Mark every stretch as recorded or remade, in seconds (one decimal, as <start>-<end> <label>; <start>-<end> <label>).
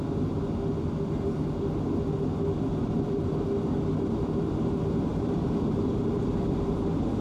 0.0-2.7 recorded; 2.7-3.3 remade; 3.3-5.1 recorded; 5.1-5.9 remade; 5.9-7.2 recorded